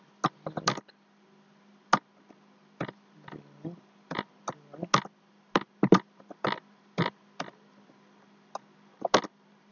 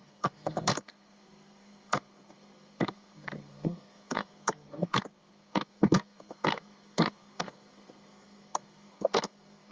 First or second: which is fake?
second